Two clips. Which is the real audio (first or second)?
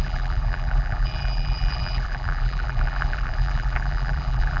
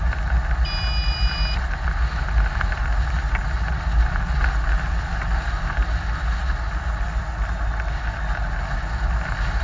second